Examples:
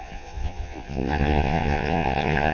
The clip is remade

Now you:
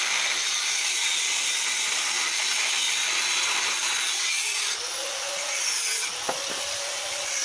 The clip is recorded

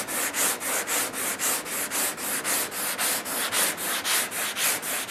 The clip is recorded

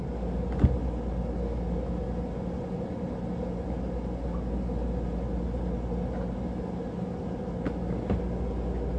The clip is recorded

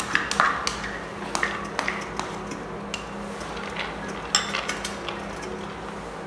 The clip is recorded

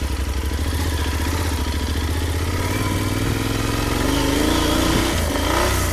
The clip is recorded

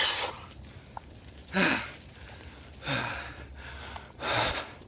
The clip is recorded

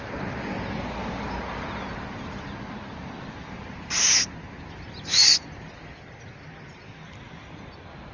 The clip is recorded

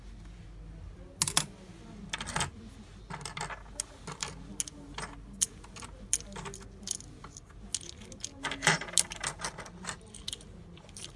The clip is recorded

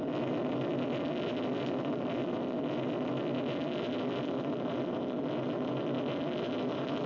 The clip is recorded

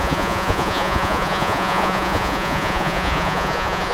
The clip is remade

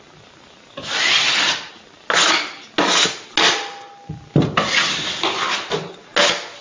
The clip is recorded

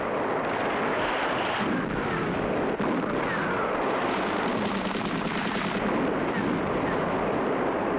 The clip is recorded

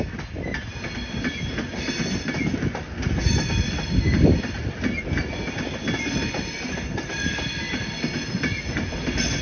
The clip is recorded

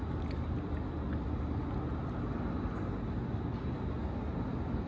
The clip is recorded